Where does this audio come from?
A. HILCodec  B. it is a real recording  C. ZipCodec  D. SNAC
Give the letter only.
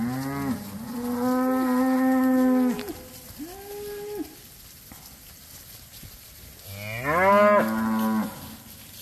B